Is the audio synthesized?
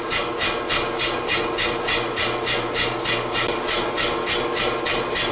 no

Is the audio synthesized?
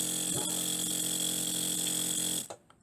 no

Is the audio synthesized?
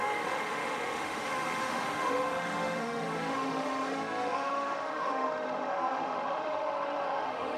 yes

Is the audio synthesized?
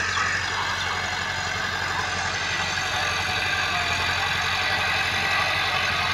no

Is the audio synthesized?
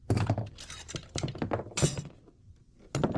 yes